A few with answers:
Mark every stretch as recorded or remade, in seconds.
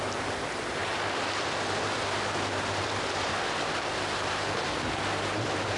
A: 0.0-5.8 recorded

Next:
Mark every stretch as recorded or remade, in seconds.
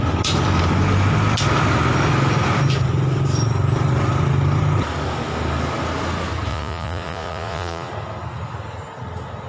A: 0.0-6.5 recorded; 6.5-7.9 remade; 7.9-9.5 recorded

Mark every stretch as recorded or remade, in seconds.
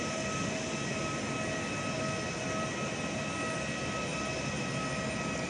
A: 0.0-5.5 recorded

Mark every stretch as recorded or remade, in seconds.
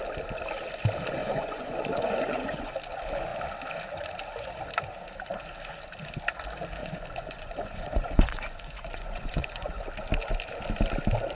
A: 0.0-1.2 recorded; 1.2-2.7 remade; 2.7-6.8 recorded; 6.8-9.8 remade; 9.8-11.3 recorded